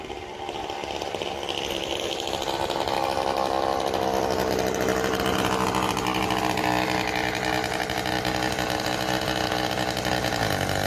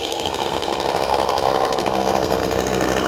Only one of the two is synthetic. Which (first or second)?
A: second